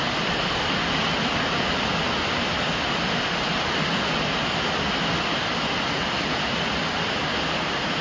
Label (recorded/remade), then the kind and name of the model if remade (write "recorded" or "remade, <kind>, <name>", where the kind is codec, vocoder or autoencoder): recorded